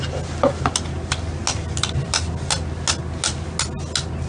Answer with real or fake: real